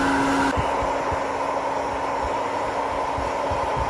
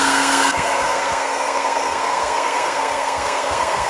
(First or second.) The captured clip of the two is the first